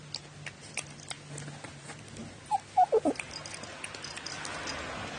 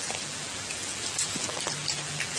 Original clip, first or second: first